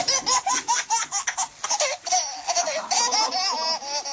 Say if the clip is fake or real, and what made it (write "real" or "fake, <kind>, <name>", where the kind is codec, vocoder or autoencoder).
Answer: real